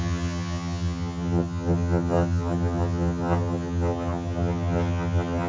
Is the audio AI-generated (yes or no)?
yes